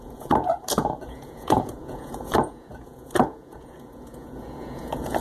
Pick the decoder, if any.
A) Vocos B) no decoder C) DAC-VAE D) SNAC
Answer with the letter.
A